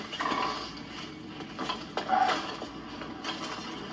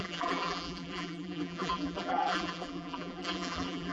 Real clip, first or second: first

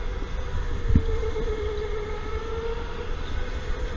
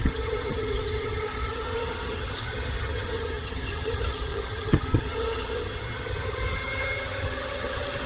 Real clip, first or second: first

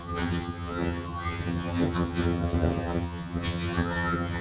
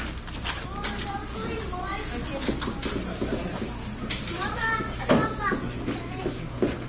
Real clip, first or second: second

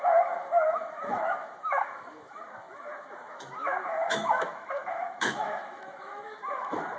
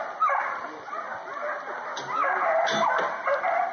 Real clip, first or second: second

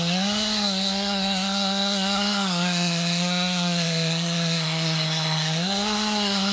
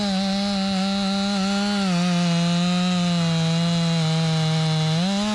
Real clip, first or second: second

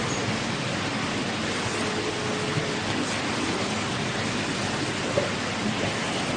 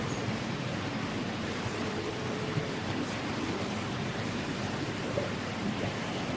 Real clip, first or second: first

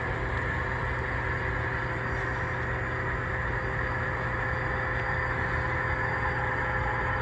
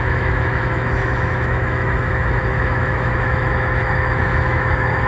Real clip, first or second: first